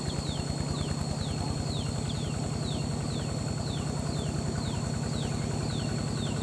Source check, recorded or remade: recorded